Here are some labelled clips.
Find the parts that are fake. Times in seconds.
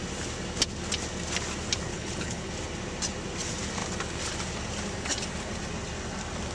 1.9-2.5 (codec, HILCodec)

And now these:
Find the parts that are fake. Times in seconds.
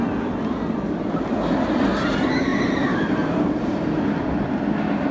none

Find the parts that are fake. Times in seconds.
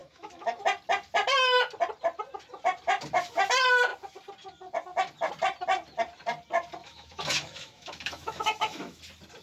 0.0-0.6 (autoencoder, DAC-VAE); 6.8-9.0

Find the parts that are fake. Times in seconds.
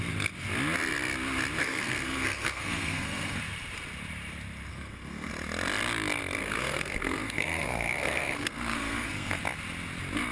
1.6-3.4 (codec, SNAC); 4.7-5.3; 6.4-9.4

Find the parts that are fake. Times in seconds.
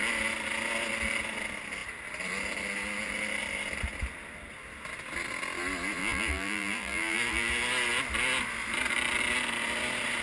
6.0-7.5 (vocoder, BigVGAN v2)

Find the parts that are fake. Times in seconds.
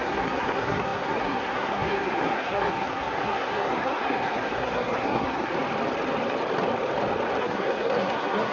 0.0-5.5 (codec, SNAC); 7.4-8.5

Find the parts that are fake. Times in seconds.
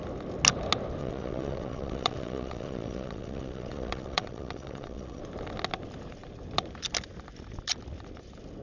1.0-5.2 (vocoder, WaveNeXt)